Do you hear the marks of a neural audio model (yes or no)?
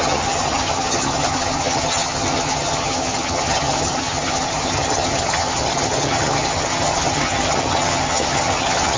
yes